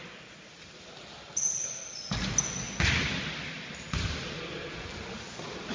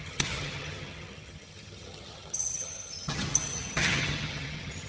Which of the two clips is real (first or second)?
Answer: first